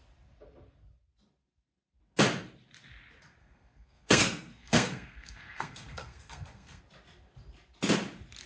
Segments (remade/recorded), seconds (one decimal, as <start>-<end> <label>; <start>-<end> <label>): 0.0-3.4 recorded; 3.4-6.8 remade; 6.8-8.5 recorded